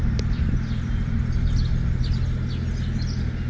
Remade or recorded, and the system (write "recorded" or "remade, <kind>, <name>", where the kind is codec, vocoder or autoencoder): recorded